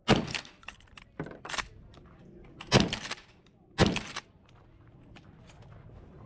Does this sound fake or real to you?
real